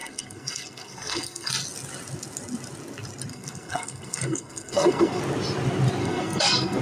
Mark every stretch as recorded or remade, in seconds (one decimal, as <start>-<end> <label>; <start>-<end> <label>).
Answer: 0.0-1.5 remade; 1.5-3.3 recorded; 3.3-5.2 remade; 5.2-6.0 recorded; 6.0-6.8 remade